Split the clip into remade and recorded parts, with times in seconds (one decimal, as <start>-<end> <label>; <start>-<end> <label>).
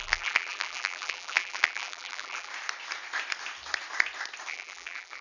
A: 0.0-2.5 remade; 2.5-4.5 recorded; 4.5-5.2 remade